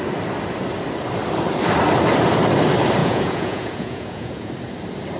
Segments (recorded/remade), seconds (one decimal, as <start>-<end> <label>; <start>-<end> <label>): 0.0-3.0 recorded; 3.0-4.5 remade; 4.5-5.2 recorded